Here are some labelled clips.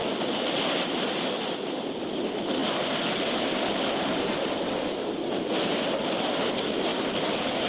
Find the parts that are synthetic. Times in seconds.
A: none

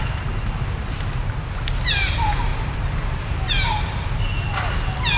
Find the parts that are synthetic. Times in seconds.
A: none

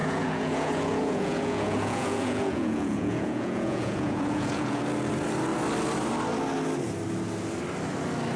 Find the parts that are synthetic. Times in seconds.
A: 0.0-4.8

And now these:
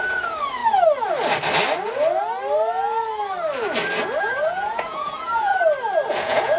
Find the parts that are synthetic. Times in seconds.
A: 0.0-0.6; 4.2-5.5; 6.1-6.6